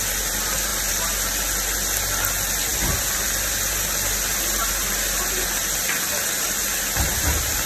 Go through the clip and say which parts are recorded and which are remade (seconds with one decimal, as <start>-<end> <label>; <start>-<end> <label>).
0.0-7.7 recorded